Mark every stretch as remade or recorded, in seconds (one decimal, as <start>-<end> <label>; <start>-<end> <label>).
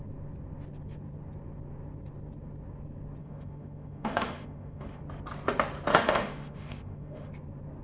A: 0.0-3.2 recorded; 3.2-5.0 remade; 5.0-5.9 recorded; 5.9-7.3 remade; 7.3-7.8 recorded